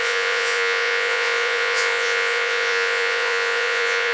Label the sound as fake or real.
fake